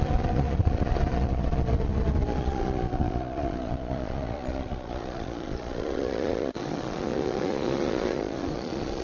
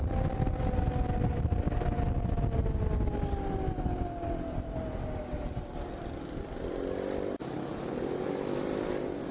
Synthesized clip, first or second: first